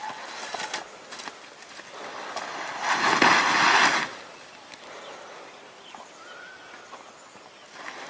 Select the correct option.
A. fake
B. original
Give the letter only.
B